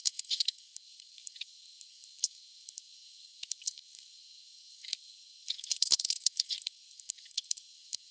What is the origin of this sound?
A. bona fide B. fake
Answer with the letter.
B